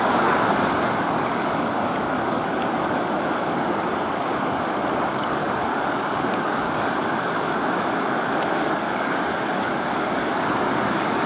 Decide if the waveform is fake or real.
fake